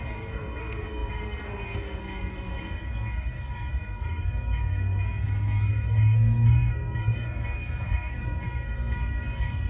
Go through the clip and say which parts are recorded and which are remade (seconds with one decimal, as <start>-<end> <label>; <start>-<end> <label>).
0.0-9.7 remade